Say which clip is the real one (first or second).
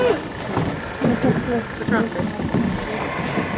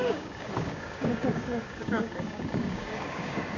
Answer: first